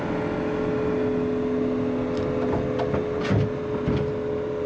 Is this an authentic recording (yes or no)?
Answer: yes